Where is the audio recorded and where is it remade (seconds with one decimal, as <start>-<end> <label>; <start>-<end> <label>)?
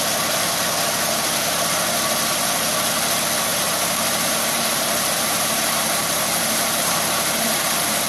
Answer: 0.0-3.5 recorded; 3.5-8.1 remade